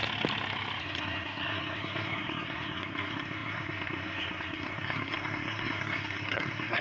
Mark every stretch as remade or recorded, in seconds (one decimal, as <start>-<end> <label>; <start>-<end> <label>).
0.0-0.8 recorded; 0.8-6.8 remade